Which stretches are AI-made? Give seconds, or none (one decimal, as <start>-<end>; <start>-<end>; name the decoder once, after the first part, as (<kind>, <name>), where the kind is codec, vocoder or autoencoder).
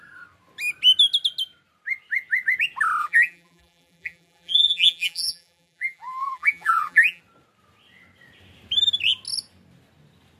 3.0-7.2 (vocoder, BigVGAN v2)